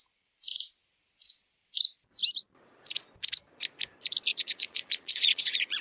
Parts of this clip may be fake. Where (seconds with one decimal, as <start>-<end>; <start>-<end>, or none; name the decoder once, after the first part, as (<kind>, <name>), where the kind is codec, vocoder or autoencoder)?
4.3-5.8 (vocoder, Vocos)